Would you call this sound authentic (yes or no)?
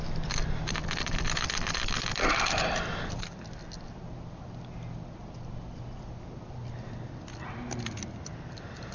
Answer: yes